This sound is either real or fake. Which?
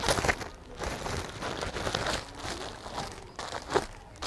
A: real